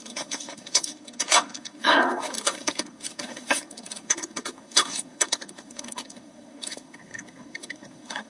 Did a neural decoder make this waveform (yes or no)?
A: yes